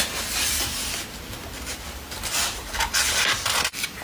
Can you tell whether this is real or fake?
real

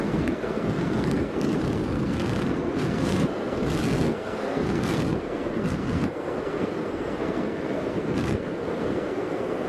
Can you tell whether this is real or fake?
fake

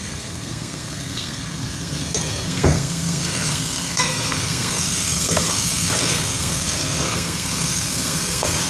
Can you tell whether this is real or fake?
fake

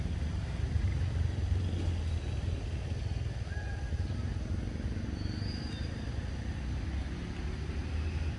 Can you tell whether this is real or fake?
real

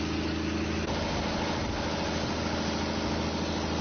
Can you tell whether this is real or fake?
real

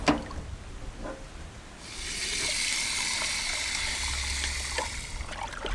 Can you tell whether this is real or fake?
real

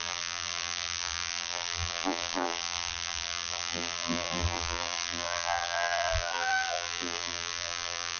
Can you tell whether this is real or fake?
fake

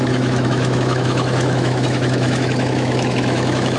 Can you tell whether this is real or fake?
fake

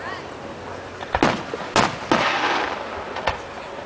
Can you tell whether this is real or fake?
real